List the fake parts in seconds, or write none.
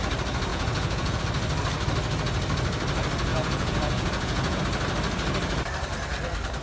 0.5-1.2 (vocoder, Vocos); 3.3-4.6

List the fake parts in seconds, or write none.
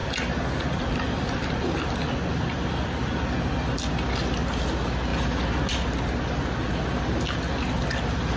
none